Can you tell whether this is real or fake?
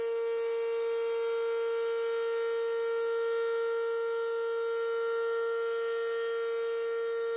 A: real